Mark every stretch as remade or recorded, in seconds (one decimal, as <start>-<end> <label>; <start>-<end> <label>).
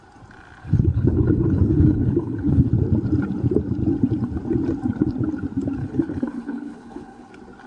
0.0-0.6 recorded; 0.6-2.7 remade; 2.7-5.8 recorded; 5.8-7.3 remade; 7.3-7.7 recorded